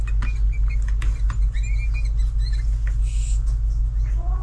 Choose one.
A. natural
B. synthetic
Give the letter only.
A